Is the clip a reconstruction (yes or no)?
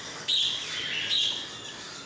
no